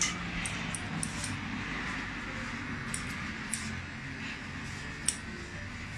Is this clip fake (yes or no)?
no